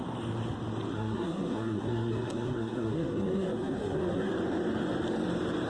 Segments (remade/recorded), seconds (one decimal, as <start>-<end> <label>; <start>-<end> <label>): 0.0-0.9 recorded; 0.9-4.3 remade; 4.3-5.7 recorded